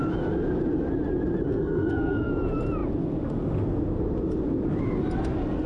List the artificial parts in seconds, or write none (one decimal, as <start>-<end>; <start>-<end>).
1.5-2.3